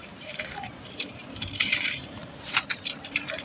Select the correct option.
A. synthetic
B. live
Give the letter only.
A